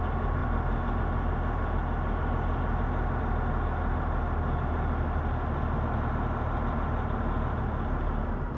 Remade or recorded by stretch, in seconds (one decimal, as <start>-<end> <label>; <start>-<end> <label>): 0.0-8.6 recorded